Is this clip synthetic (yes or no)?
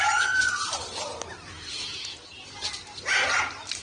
no